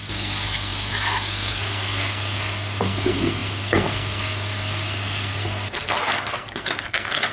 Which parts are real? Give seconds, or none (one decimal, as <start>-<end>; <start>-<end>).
none